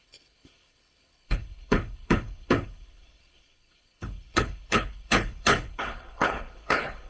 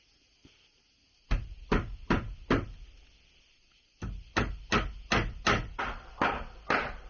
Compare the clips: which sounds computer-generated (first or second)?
first